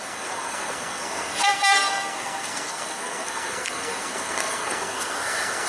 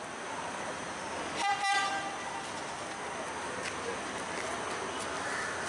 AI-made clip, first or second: first